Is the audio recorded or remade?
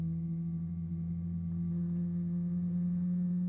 recorded